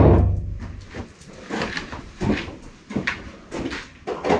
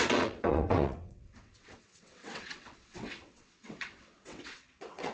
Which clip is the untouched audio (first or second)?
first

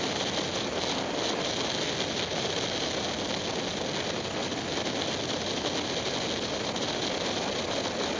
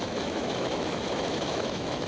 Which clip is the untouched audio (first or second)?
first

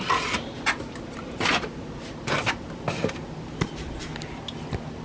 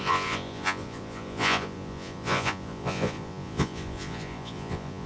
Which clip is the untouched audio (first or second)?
first